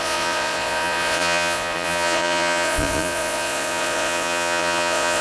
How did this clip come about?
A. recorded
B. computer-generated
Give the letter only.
B